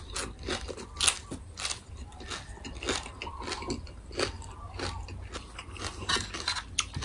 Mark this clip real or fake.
real